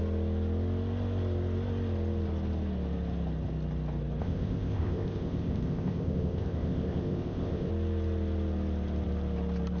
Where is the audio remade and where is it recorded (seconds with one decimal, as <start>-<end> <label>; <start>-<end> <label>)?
0.0-4.2 recorded; 4.2-7.7 remade; 7.7-9.8 recorded